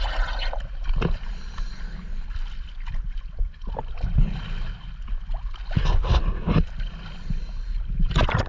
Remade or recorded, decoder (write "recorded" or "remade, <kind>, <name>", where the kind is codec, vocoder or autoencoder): recorded